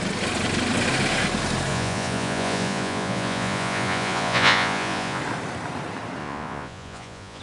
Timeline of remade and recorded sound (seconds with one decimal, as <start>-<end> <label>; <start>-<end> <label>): 0.0-1.7 recorded; 1.7-5.2 remade; 5.2-6.2 recorded; 6.2-7.4 remade